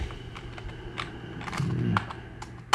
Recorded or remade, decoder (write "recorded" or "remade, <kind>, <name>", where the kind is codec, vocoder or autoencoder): recorded